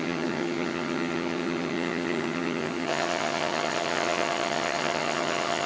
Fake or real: fake